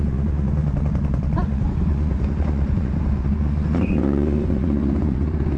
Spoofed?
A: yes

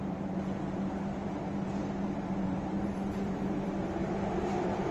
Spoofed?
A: yes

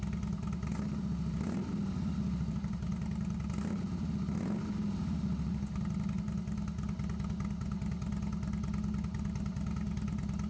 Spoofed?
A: no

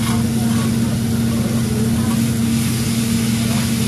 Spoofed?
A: no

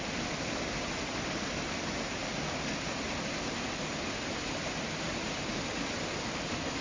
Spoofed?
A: no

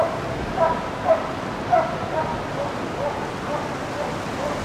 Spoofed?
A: no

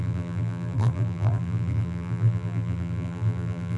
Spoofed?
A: yes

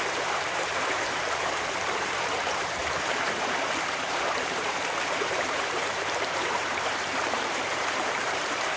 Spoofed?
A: yes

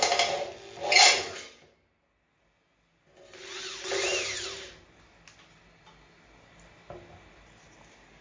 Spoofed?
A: no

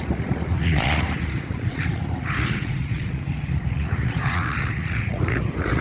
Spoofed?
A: yes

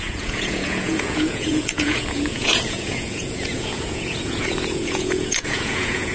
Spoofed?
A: yes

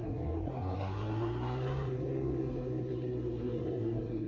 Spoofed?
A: yes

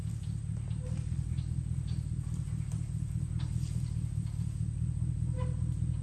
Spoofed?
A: no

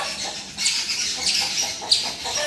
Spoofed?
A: no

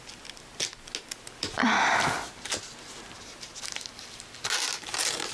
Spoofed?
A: no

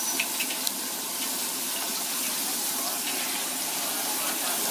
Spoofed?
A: no